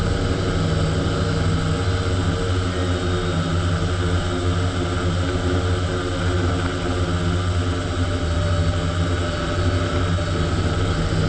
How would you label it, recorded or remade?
recorded